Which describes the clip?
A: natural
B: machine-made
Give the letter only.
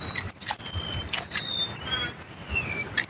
A